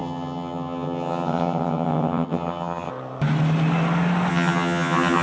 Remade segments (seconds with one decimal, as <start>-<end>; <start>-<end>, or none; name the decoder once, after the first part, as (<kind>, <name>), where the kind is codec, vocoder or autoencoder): 0.0-2.9 (vocoder, HiFi-GAN); 4.3-5.2